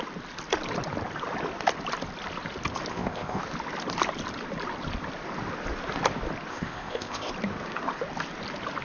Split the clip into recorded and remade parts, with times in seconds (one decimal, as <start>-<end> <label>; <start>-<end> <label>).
0.0-2.9 recorded; 2.9-3.4 remade; 3.4-6.5 recorded; 6.5-7.3 remade; 7.3-8.8 recorded